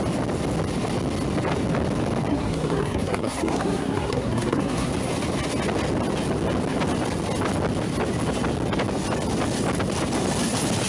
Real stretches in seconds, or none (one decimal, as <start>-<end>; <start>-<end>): 0.0-2.3; 4.9-10.9